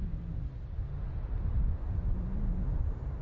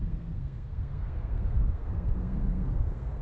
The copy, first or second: second